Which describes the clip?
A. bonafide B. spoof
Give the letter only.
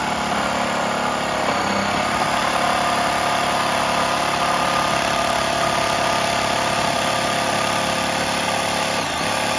A